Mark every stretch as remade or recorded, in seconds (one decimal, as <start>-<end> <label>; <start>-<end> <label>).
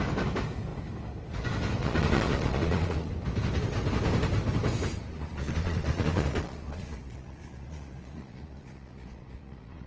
0.0-1.8 recorded; 1.8-3.1 remade; 3.1-5.1 recorded; 5.1-9.9 remade